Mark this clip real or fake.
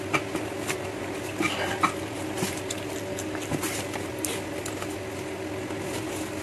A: real